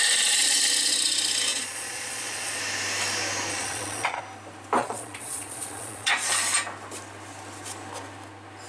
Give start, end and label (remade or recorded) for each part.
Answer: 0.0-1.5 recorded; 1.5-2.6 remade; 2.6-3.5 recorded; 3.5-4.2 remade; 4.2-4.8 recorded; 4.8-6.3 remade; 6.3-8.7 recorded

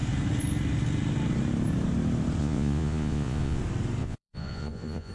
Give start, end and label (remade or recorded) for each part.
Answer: 0.0-2.4 recorded; 2.4-3.6 remade; 3.6-4.0 recorded; 4.0-5.1 remade